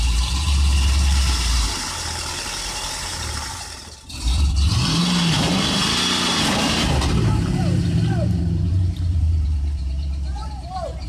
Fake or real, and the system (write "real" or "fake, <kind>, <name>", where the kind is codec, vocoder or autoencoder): fake, vocoder, BigVGAN v2